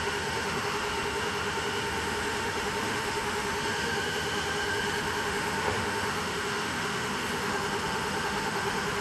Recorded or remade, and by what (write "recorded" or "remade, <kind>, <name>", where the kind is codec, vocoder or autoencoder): remade, autoencoder, DAC-VAE